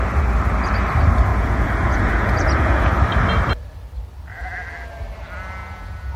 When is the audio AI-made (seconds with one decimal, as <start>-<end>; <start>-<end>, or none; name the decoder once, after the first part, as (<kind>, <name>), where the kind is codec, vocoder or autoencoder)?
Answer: 1.3-2.9 (vocoder, Vocos); 5.6-6.2